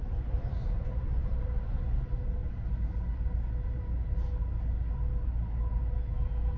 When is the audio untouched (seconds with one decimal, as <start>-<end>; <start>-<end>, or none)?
0.0-6.6

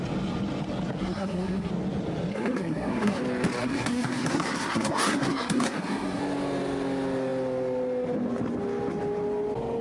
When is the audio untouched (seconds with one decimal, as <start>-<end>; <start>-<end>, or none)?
0.0-1.0; 1.7-2.3; 3.2-3.6; 6.2-9.8

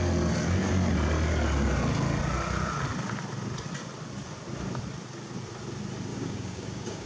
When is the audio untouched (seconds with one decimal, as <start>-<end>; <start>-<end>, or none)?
0.0-6.1

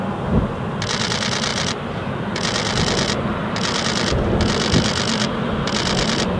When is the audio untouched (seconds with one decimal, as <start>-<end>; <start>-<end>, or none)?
0.0-6.4

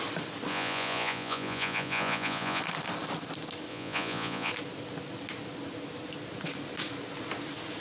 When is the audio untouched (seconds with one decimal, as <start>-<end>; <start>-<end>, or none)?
0.0-0.5; 2.6-3.7; 4.5-7.8

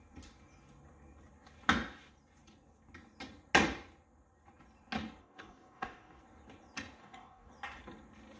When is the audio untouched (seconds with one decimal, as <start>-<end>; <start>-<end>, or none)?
0.0-5.2; 6.2-7.0; 7.5-8.4